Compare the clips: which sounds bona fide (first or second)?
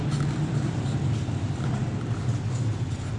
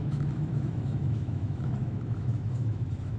first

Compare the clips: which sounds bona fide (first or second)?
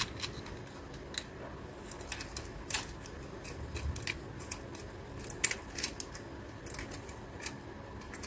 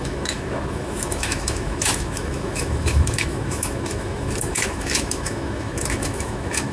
first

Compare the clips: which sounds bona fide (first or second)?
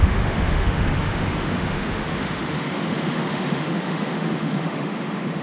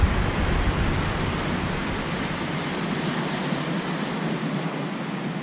second